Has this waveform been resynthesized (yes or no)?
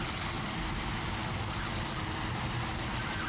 no